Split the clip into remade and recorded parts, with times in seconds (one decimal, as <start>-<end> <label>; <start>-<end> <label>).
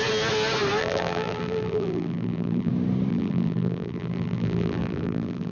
0.0-0.8 recorded; 0.8-2.7 remade; 2.7-3.1 recorded; 3.1-5.5 remade